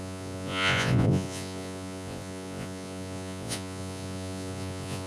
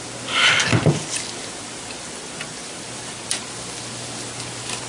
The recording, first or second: second